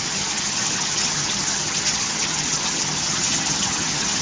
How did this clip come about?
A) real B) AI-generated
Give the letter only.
B